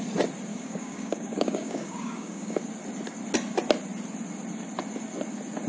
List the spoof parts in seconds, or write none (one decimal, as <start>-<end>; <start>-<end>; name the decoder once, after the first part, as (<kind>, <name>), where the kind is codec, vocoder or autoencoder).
0.5-2.6 (codec, DAC)